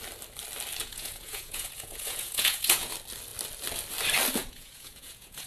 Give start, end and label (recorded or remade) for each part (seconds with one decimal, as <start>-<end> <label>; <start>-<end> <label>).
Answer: 0.0-0.8 recorded; 0.8-2.9 remade; 2.9-4.4 recorded; 4.4-5.5 remade